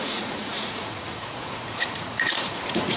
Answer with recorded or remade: remade